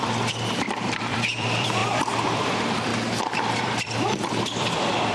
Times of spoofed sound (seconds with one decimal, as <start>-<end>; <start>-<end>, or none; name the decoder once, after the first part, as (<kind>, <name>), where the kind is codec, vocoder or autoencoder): 0.0-2.9 (vocoder, BigVGAN v2); 3.4-5.1